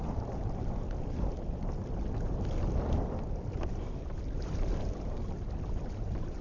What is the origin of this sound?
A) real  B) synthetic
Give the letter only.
A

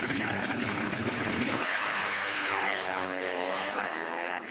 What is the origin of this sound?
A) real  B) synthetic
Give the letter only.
B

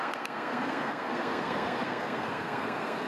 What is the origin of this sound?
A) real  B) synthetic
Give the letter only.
B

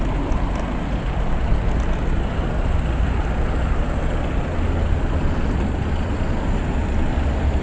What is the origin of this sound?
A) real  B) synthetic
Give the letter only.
A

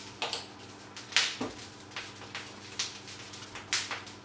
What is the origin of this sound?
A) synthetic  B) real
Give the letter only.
B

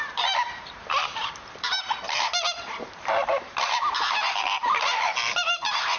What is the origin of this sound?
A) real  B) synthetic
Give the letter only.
B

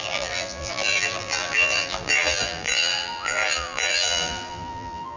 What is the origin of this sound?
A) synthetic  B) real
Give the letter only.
A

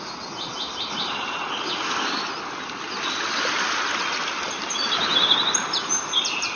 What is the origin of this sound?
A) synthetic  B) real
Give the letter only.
B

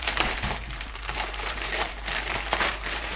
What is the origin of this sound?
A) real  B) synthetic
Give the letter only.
B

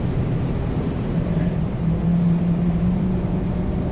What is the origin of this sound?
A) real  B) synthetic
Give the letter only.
B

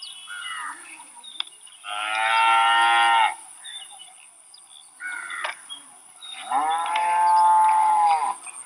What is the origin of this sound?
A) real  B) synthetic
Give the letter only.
A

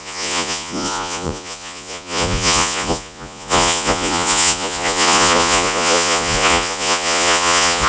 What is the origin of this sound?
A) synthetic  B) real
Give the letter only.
A